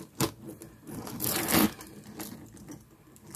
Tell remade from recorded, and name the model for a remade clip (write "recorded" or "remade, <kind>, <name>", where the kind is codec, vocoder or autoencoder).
recorded